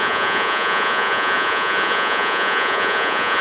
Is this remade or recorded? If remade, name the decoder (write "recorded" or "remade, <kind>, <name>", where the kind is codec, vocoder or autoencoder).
remade, vocoder, Vocos